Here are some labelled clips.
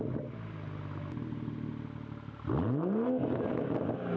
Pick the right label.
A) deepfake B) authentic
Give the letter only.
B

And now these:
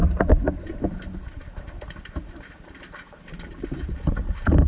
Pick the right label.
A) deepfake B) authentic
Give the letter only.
A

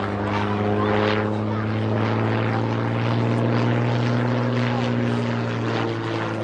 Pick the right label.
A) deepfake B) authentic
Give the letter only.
B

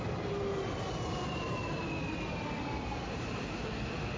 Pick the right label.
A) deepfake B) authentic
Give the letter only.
B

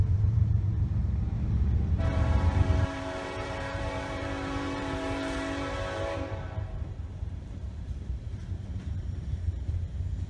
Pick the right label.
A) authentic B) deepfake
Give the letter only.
B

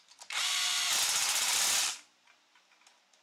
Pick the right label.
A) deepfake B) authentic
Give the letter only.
B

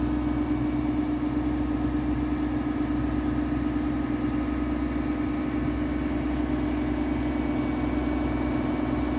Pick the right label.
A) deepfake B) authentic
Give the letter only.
B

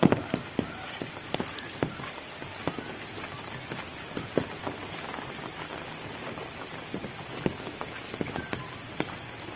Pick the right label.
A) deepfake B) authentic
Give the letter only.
B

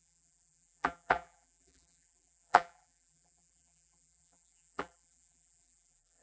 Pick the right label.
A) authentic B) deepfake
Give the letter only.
B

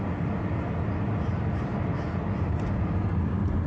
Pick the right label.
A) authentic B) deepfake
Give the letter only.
A